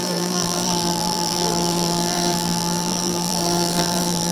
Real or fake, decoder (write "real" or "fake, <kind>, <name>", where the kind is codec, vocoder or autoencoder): fake, vocoder, BigVGAN v2